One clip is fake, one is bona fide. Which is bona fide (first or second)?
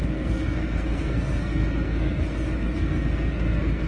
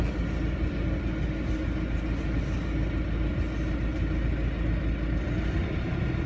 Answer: second